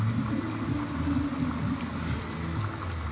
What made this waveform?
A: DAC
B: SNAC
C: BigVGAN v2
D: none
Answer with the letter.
D